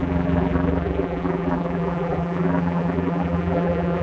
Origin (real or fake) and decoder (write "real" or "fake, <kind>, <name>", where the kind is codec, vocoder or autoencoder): fake, vocoder, BigVGAN v2